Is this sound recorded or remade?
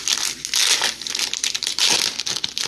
recorded